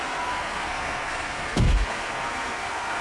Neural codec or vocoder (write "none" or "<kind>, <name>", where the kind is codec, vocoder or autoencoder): codec, SNAC